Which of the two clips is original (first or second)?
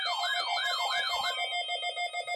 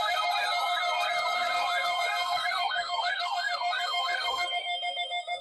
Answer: first